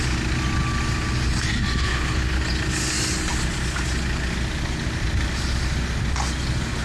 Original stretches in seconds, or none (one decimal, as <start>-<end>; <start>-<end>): 0.0-1.8; 2.4-6.8